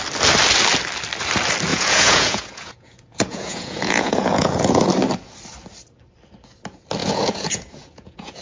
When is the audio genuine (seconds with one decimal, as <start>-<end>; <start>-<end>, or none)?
0.0-1.7; 4.9-7.0